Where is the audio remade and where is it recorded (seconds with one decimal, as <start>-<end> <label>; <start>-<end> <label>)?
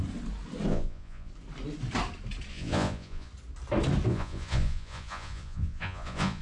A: 0.0-0.7 recorded; 0.7-1.3 remade; 1.3-2.5 recorded; 2.5-3.3 remade; 3.3-4.1 recorded; 4.1-6.4 remade